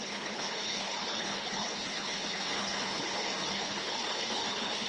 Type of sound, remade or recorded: remade